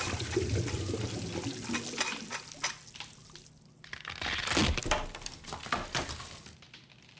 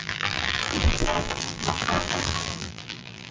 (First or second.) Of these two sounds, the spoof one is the second